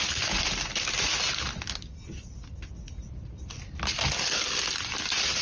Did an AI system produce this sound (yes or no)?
no